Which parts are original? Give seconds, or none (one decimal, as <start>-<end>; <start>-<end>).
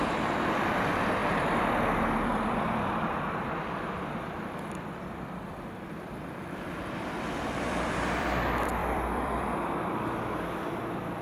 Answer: 1.2-1.9